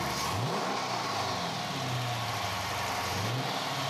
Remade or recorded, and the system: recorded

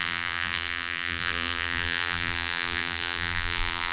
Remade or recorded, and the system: remade, vocoder, BigVGAN v2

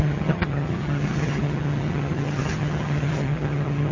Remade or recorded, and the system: remade, vocoder, HiFi-GAN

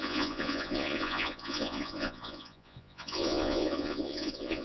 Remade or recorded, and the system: remade, vocoder, Vocos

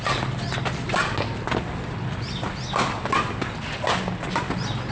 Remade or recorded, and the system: recorded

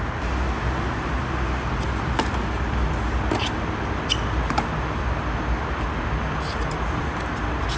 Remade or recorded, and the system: recorded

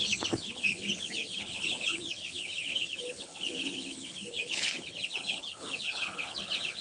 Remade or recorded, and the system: remade, codec, HILCodec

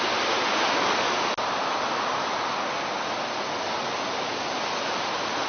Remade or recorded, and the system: recorded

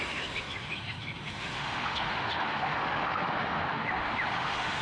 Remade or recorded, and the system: remade, autoencoder, DAC-VAE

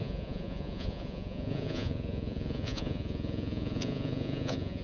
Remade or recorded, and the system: remade, vocoder, Vocos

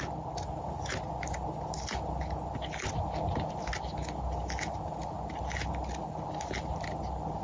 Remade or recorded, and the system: recorded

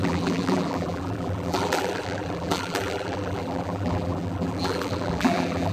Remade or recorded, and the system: remade, vocoder, BigVGAN v2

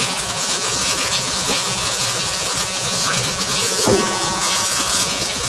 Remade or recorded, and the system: remade, vocoder, Vocos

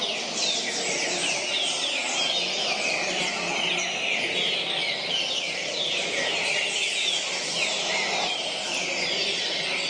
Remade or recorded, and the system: recorded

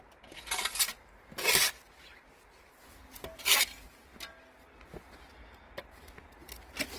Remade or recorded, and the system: recorded